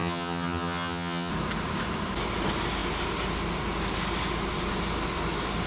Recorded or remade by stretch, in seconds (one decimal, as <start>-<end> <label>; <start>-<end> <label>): 0.0-1.3 remade; 1.3-5.7 recorded